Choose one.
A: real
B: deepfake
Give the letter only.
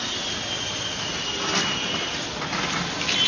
A